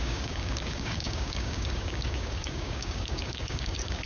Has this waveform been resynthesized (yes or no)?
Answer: yes